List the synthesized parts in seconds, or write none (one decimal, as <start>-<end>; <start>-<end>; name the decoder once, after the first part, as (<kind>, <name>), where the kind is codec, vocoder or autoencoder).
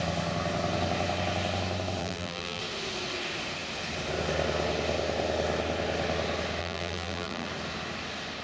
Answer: 2.0-2.6 (vocoder, BigVGAN v2); 6.6-7.5